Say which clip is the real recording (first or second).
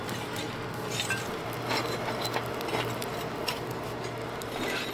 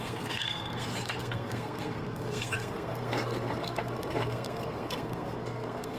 first